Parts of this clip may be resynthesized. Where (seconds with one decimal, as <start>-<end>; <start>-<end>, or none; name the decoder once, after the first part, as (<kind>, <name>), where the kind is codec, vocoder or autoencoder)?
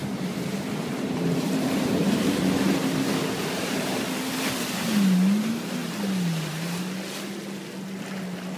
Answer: 0.0-4.8 (vocoder, BigVGAN v2)